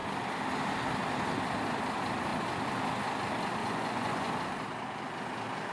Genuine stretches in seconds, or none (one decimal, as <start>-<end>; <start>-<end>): 0.0-3.6; 4.3-5.7